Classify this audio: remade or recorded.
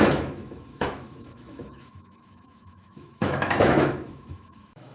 remade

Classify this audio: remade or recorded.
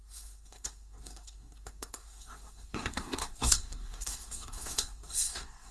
remade